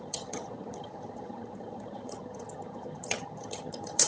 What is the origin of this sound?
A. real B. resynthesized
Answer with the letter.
B